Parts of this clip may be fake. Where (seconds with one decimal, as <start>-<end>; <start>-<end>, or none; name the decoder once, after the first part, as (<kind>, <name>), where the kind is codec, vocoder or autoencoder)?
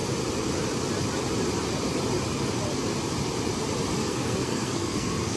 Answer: 4.0-5.4 (codec, SNAC)